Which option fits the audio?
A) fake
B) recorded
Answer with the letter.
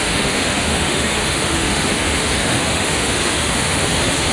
A